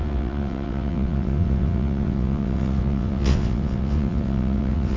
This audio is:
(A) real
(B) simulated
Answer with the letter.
B